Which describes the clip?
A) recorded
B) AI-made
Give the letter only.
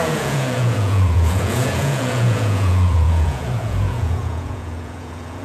B